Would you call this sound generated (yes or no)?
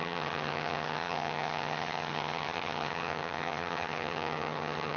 yes